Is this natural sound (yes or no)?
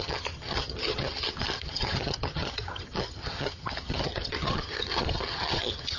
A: no